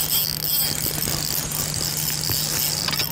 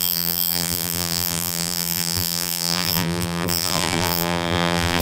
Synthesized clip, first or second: second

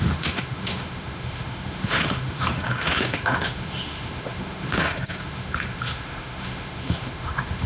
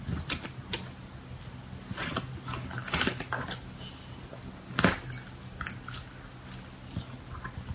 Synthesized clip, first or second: first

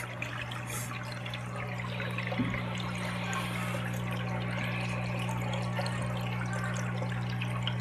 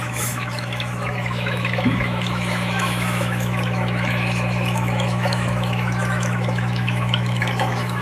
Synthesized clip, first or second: second